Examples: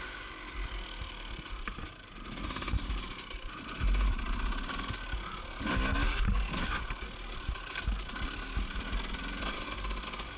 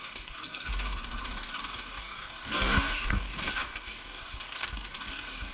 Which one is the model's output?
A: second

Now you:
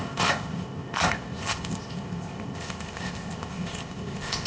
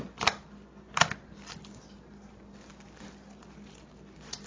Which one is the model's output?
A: first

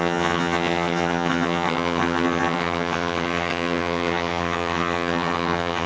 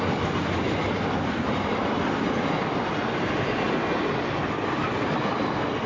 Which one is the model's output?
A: first